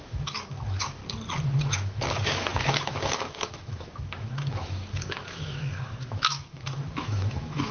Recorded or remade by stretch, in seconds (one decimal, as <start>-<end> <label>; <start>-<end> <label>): 0.0-1.0 remade; 1.0-1.6 recorded; 1.6-7.7 remade